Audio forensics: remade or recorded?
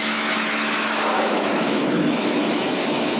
remade